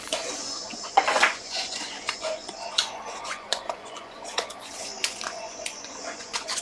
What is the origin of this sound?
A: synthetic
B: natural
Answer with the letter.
A